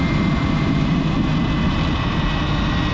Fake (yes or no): no